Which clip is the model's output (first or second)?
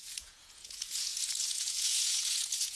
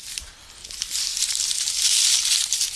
first